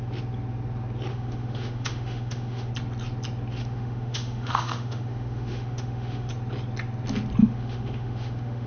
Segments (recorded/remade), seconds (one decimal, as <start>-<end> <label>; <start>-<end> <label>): 0.0-1.1 recorded; 1.1-2.7 remade; 2.7-3.6 recorded; 3.6-6.3 remade; 6.3-7.4 recorded; 7.4-8.7 remade